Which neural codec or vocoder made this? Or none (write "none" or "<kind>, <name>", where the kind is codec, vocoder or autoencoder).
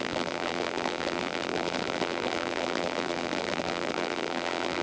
vocoder, BigVGAN v2